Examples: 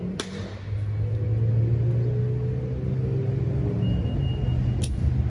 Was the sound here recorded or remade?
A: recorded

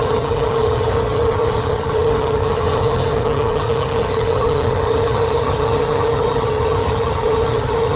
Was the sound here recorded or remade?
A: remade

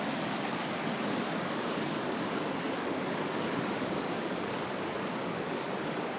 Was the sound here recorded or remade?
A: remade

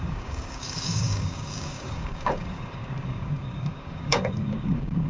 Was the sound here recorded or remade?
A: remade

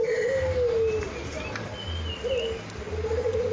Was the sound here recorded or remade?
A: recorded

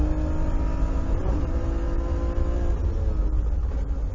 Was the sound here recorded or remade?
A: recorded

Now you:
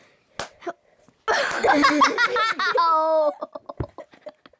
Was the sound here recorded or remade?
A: recorded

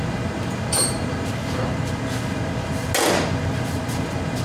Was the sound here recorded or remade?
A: recorded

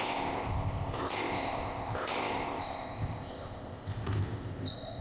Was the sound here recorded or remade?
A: remade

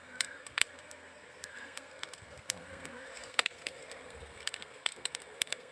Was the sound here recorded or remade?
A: remade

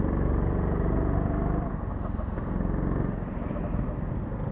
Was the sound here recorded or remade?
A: recorded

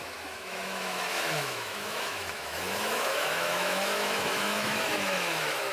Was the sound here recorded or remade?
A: remade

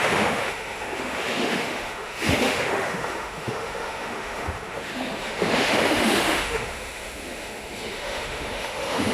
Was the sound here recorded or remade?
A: remade